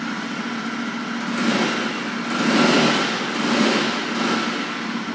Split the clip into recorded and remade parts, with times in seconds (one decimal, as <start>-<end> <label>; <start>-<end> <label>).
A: 0.0-5.1 recorded